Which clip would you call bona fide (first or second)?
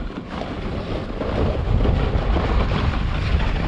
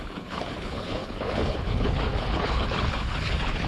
first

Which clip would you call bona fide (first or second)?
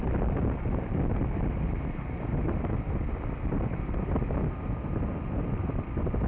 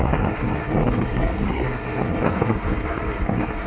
first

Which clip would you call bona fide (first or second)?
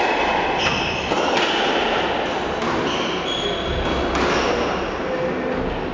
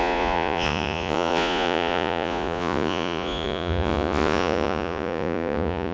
first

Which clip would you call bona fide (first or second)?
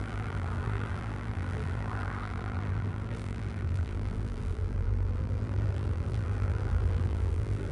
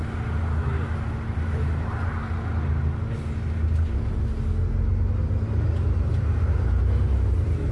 second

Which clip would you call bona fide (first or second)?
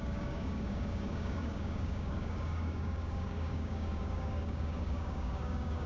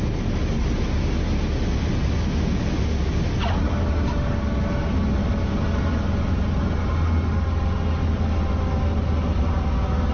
second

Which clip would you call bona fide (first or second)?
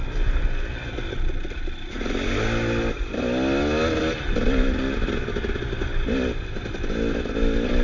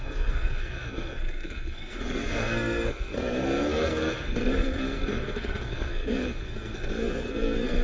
first